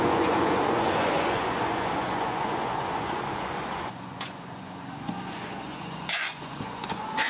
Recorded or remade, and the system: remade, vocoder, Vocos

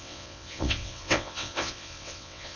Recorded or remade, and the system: remade, vocoder, WaveNeXt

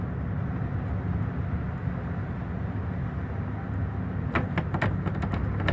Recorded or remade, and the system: recorded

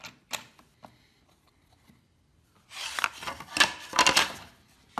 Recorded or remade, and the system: recorded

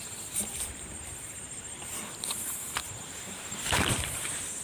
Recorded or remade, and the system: remade, vocoder, BigVGAN v2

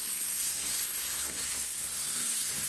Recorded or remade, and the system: remade, codec, SNAC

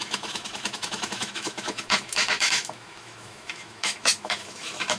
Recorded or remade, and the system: remade, autoencoder, DAC-VAE